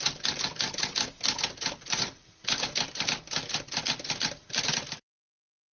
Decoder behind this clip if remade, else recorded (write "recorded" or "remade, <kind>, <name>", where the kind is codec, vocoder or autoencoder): recorded